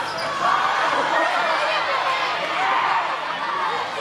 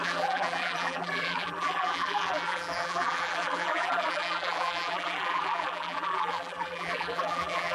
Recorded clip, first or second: first